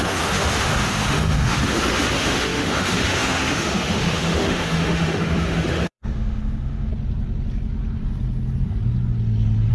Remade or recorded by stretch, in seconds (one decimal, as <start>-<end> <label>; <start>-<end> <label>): 0.0-6.9 remade; 6.9-9.7 recorded